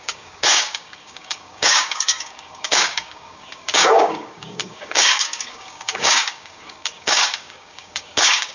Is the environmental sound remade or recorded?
remade